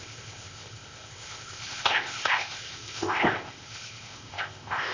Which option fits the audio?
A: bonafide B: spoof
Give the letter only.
B